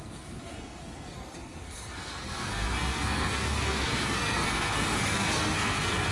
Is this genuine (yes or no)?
no